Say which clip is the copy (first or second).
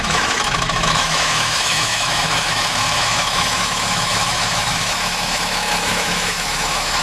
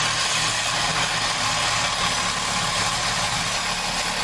first